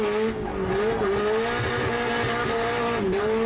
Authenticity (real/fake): real